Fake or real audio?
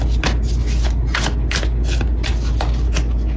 real